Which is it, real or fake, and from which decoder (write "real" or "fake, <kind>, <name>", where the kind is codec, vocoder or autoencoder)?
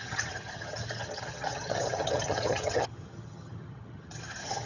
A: fake, vocoder, HiFi-GAN